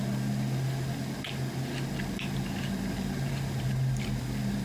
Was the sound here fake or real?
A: real